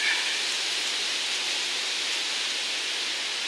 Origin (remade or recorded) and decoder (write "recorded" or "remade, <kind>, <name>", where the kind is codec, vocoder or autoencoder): recorded